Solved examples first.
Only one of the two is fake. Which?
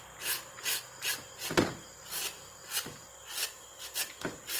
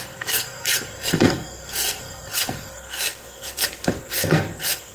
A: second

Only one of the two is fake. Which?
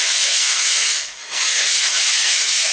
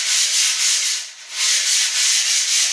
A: first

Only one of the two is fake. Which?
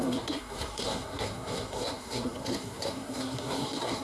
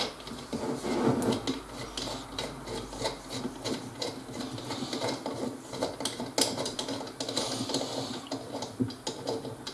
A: first